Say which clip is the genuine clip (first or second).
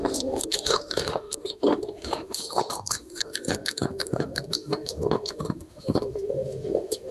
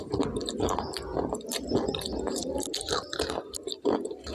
second